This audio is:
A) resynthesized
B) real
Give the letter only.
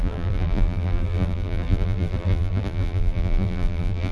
A